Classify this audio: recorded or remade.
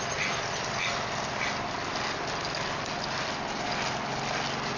recorded